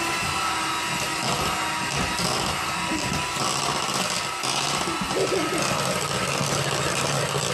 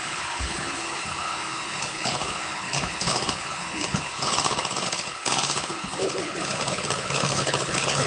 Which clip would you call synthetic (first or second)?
second